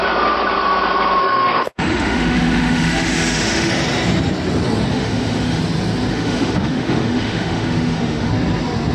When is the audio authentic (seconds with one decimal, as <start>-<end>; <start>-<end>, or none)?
0.0-1.2; 3.7-4.9; 5.6-6.1; 8.3-8.9